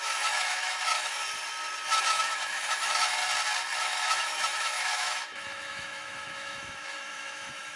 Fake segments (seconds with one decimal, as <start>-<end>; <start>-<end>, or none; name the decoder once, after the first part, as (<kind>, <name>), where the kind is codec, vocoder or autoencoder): 0.0-1.2 (autoencoder, DAC-VAE); 2.0-3.2; 3.8-7.8

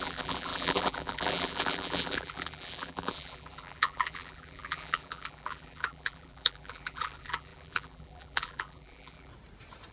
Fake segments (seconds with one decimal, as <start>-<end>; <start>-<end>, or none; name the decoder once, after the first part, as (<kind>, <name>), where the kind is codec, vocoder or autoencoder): 0.0-9.3 (vocoder, BigVGAN v2)

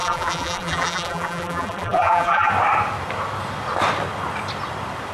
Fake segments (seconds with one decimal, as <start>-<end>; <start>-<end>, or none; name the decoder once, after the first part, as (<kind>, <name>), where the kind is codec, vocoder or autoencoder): 0.0-2.5 (vocoder, BigVGAN v2)

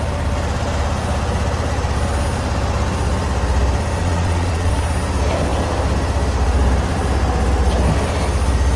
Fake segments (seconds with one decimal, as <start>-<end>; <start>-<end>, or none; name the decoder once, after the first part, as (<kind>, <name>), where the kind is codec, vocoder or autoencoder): 4.0-4.7 (vocoder, Vocos)

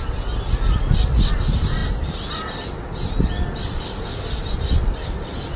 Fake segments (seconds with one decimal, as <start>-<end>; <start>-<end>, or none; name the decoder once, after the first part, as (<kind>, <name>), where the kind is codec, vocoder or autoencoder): none

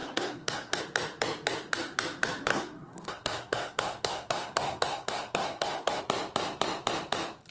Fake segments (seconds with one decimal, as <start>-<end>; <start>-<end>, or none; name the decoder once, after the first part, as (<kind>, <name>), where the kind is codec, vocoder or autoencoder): 0.0-0.8 (codec, SNAC); 2.5-6.0

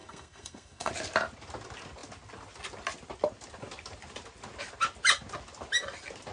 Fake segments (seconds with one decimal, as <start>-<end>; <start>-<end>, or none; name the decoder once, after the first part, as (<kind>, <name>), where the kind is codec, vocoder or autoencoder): 0.0-0.9 (codec, SNAC)